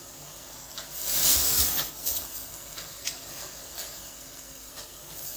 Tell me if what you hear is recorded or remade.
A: remade